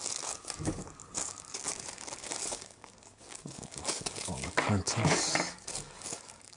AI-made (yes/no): yes